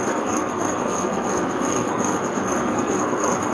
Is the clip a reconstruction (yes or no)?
yes